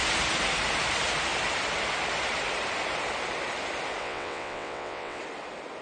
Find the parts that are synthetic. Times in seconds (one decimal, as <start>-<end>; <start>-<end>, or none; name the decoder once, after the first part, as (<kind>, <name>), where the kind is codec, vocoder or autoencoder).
4.0-5.2 (vocoder, WaveNeXt)